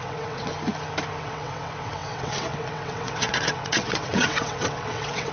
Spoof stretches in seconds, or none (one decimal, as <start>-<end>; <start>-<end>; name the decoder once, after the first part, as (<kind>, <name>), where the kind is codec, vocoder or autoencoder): 0.0-0.5 (vocoder, WaveNeXt); 1.2-5.3